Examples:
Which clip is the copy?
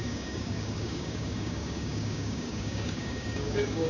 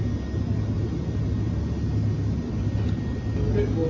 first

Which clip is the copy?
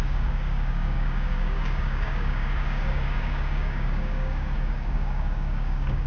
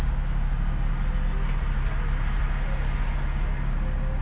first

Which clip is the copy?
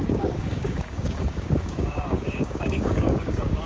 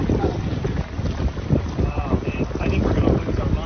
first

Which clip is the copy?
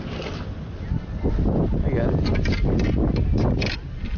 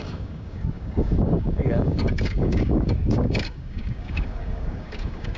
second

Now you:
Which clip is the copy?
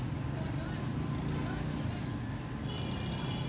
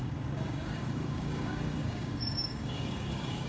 second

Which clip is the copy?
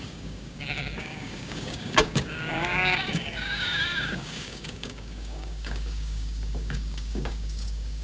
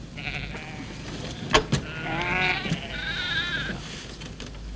first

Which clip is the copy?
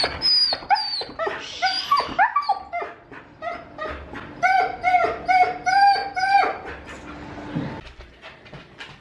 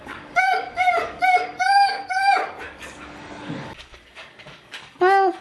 second